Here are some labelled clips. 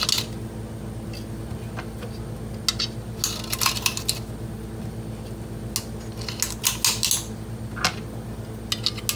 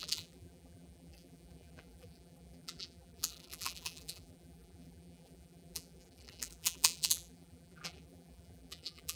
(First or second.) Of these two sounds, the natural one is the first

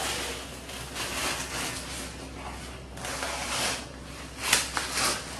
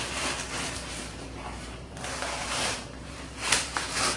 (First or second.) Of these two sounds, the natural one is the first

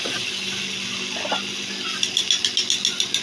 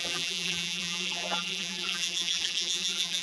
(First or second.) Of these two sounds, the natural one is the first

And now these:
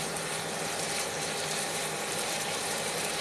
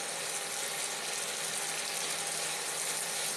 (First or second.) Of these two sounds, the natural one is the second